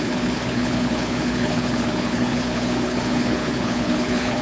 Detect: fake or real fake